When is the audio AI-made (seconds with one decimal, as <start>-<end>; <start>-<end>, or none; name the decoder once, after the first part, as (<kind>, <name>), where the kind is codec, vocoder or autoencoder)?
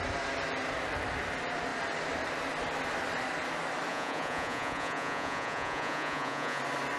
3.9-6.6 (vocoder, Vocos)